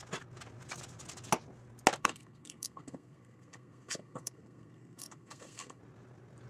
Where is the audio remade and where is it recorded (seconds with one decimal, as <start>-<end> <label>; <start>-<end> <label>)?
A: 0.0-2.0 recorded; 2.0-5.8 remade; 5.8-6.5 recorded